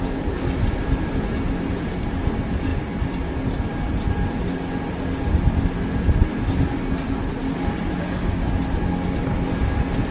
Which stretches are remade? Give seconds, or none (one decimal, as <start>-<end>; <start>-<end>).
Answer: none